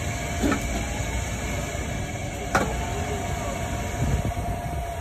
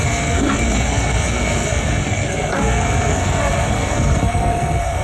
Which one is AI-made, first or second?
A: second